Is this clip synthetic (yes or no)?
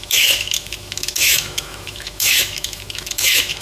yes